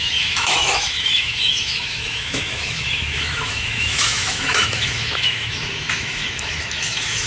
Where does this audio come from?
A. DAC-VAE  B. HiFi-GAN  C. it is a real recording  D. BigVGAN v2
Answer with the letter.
A